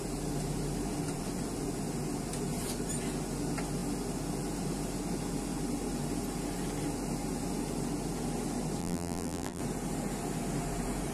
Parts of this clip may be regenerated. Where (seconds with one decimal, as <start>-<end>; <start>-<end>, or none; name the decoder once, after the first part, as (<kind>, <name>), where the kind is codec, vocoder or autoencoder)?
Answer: 8.8-9.6 (vocoder, BigVGAN v2)